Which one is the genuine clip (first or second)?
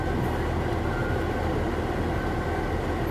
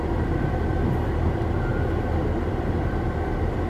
first